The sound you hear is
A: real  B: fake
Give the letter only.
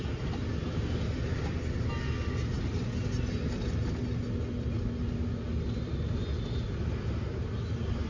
A